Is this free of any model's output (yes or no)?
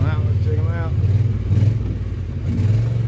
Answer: yes